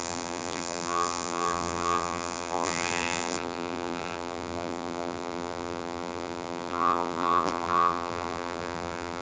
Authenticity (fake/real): fake